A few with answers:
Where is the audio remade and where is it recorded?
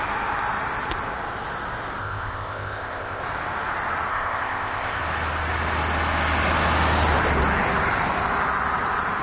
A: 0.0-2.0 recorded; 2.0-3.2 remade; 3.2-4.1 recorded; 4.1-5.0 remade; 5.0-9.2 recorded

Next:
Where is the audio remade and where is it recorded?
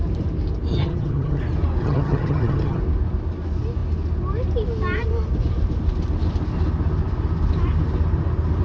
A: 0.0-0.7 recorded; 0.7-1.4 remade; 1.4-1.8 recorded; 1.8-2.8 remade; 2.8-8.6 recorded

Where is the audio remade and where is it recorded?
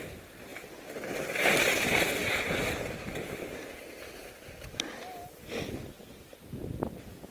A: 0.0-7.3 recorded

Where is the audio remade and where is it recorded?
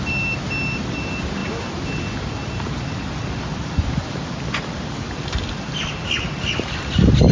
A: 0.0-7.3 recorded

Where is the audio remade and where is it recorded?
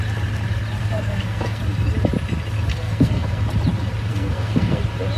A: 0.0-0.8 recorded; 0.8-1.6 remade; 1.6-2.7 recorded; 2.7-3.4 remade; 3.4-4.1 recorded; 4.1-4.8 remade; 4.8-5.2 recorded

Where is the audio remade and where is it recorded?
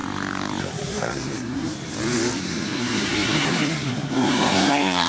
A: 0.0-0.6 recorded; 0.6-1.7 remade; 1.7-2.4 recorded; 2.4-5.1 remade